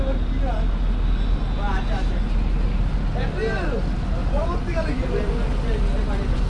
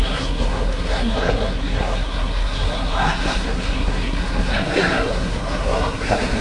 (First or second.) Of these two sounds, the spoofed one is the second